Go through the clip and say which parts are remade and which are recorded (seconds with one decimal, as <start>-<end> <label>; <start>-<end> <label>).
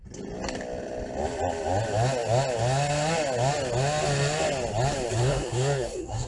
0.0-5.2 recorded; 5.2-6.3 remade